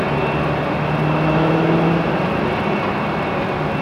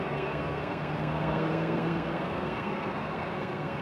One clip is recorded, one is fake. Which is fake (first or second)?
second